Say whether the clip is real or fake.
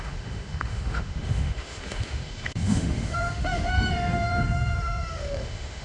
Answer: fake